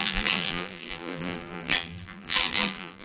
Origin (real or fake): fake